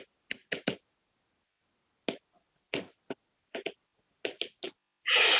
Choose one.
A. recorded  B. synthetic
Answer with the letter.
A